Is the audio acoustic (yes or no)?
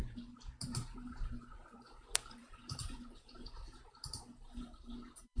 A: no